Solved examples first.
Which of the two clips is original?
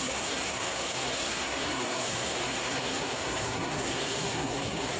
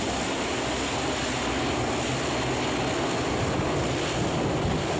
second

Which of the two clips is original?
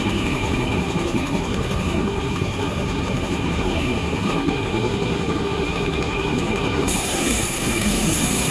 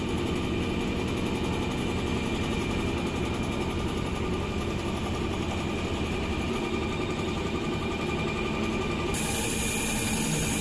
second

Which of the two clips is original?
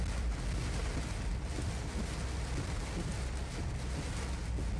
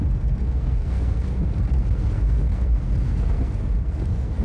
first